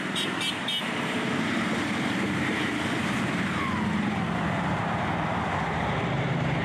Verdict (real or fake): fake